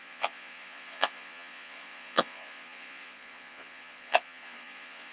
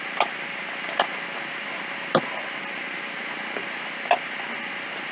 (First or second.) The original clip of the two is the second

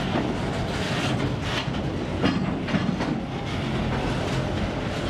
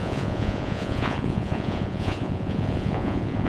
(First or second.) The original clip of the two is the first